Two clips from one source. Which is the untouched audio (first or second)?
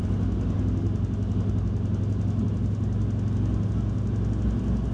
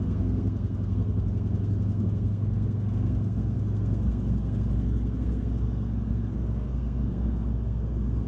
first